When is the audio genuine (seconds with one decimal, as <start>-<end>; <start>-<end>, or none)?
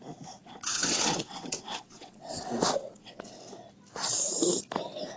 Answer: 0.0-0.4; 3.3-5.2